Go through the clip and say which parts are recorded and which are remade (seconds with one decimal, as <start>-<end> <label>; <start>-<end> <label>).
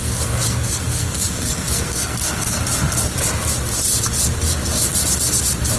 0.0-2.6 remade; 2.6-5.8 recorded